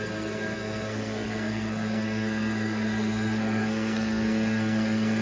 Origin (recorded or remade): remade